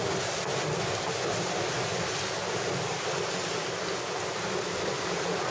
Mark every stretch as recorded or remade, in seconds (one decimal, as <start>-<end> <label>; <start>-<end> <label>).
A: 0.0-5.5 recorded